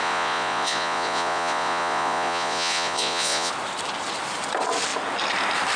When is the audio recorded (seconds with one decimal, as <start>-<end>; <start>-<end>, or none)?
3.5-5.8